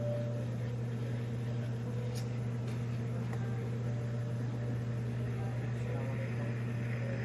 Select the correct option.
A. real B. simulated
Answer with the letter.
A